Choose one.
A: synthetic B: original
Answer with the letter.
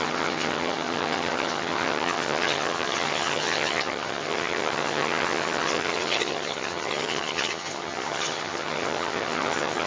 A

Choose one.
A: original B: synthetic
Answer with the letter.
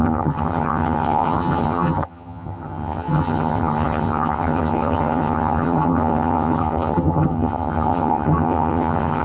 B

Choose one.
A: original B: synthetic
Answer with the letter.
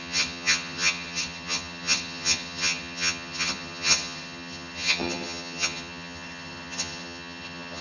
B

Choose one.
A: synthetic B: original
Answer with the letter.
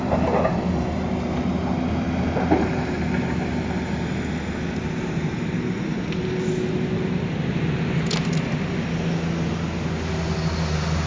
B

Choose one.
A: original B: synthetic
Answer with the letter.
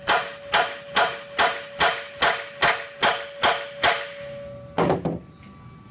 A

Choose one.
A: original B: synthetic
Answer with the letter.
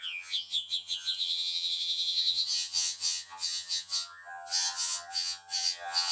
B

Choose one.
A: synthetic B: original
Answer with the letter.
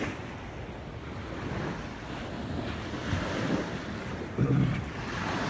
B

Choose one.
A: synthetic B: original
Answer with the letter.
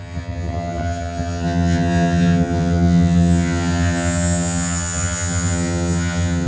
A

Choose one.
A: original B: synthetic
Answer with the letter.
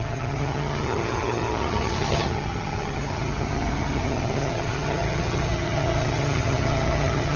B